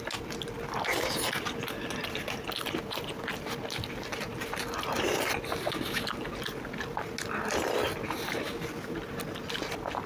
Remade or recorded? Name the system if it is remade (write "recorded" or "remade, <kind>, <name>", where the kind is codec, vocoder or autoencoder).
recorded